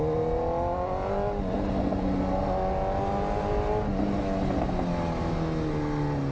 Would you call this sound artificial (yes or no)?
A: no